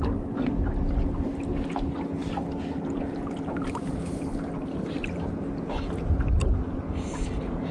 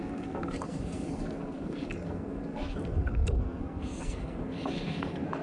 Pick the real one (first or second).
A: first